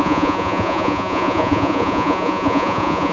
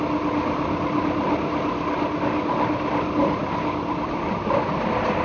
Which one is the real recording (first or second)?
second